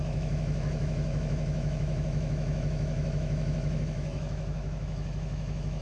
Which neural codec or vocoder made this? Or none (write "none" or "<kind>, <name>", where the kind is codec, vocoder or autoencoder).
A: autoencoder, DAC-VAE